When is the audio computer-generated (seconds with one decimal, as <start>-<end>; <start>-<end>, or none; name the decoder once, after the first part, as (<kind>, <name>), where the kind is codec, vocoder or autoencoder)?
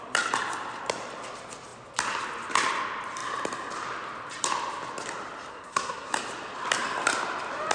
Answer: 5.5-6.1 (codec, SNAC)